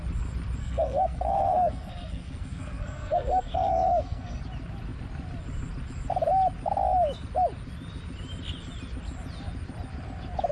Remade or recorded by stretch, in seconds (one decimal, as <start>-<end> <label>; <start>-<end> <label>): 0.0-0.6 recorded; 0.6-4.4 remade; 4.4-10.5 recorded